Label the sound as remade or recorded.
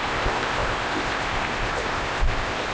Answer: remade